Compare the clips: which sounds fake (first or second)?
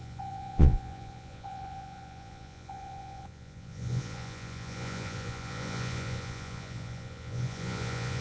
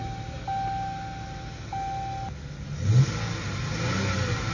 first